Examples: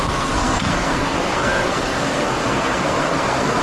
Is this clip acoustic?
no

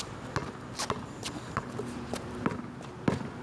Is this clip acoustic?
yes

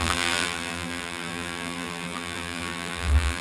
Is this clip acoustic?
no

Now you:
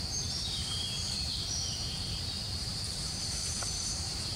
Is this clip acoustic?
no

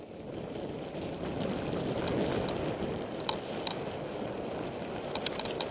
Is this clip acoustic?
yes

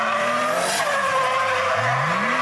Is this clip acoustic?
yes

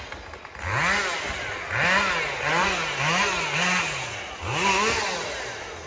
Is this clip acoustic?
yes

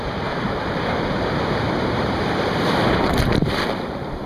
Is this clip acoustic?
no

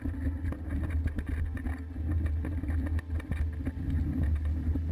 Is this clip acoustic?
yes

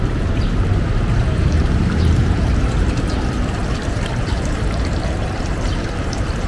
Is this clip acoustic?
no